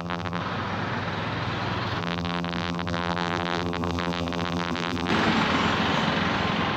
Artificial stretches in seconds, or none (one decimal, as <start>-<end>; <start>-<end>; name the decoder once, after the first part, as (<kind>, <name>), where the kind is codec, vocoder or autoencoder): 0.0-0.4 (vocoder, BigVGAN v2); 2.0-5.1